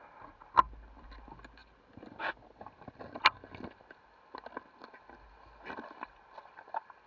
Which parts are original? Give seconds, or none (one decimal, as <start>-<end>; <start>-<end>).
0.0-7.1